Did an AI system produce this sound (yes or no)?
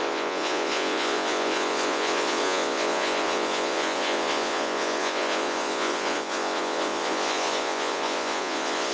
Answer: yes